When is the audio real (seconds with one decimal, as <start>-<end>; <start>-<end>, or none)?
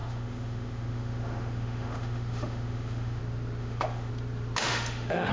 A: 3.2-3.6; 4.1-4.6